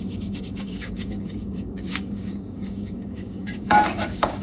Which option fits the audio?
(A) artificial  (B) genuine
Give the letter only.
A